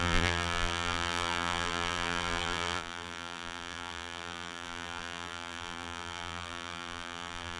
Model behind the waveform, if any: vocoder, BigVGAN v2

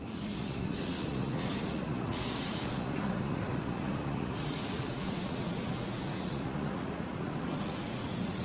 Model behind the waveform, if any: vocoder, Vocos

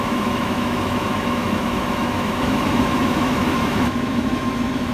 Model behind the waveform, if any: autoencoder, DAC-VAE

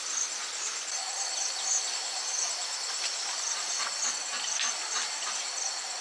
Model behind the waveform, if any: none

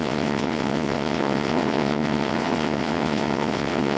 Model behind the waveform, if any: vocoder, WaveNeXt